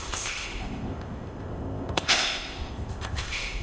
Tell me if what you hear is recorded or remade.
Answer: remade